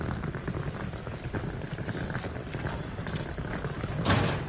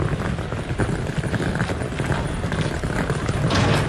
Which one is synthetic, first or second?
first